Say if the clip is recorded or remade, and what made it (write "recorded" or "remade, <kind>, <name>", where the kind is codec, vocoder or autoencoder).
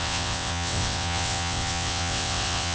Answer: remade, vocoder, WaveNeXt